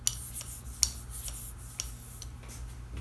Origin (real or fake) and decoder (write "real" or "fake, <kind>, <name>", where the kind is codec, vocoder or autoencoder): real